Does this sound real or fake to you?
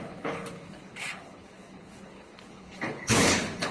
fake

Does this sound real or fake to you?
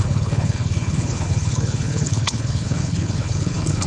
fake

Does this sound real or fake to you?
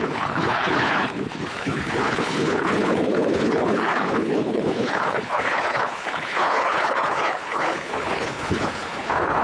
fake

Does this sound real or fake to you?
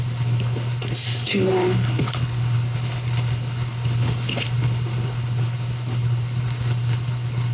fake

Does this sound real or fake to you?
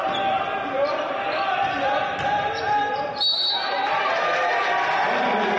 real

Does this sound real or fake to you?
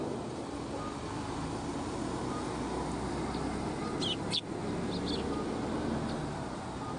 real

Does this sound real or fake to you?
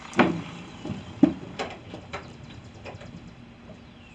real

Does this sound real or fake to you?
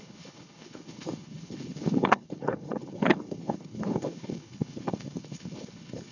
fake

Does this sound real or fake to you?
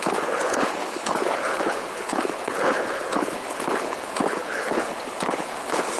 fake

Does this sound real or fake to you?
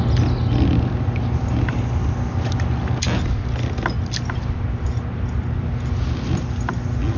real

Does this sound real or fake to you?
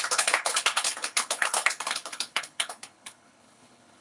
fake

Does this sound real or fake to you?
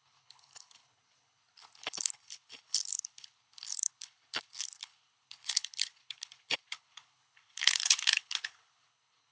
fake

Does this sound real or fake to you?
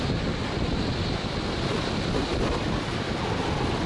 real